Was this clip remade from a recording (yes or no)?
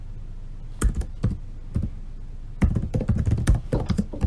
no